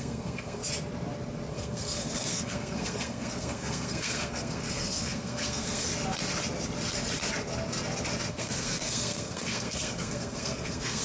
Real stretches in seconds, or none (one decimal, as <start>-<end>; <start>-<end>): 0.6-1.5; 5.9-8.3